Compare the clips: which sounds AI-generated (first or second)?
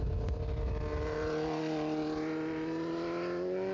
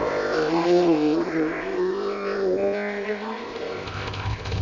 second